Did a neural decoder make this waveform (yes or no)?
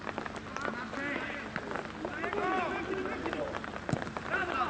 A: no